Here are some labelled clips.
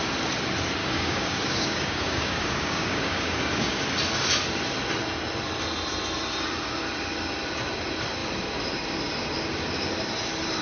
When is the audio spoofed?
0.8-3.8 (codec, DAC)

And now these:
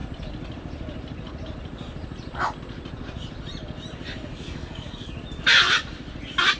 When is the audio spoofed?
4.3-5.2 (codec, DAC)

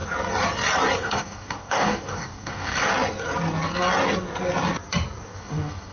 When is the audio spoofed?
1.0-2.9 (codec, DAC); 5.2-5.9

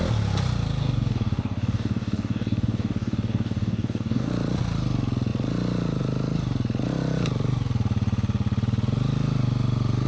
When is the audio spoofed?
0.8-4.3 (codec, DAC)

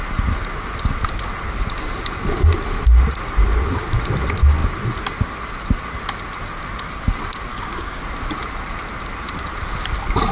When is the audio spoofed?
7.5-8.0 (codec, DAC)

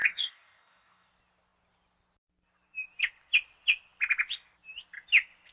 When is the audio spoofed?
0.0-1.1 (codec, DAC)

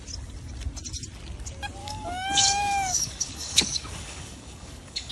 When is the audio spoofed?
1.8-5.1 (codec, DAC)

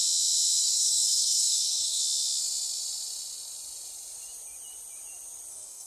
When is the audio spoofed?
0.6-2.0 (codec, DAC); 5.5-5.9